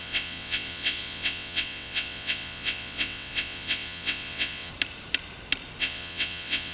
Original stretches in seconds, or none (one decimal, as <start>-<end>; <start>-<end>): 4.7-5.8